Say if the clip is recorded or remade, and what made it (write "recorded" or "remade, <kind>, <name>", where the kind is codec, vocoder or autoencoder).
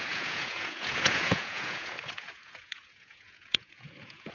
remade, vocoder, Vocos